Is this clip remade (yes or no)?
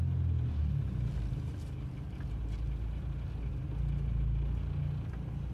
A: no